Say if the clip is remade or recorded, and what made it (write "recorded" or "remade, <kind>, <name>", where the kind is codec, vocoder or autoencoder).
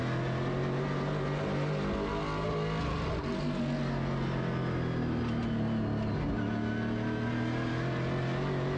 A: recorded